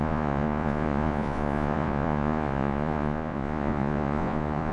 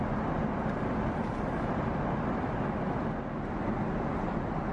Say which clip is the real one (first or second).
second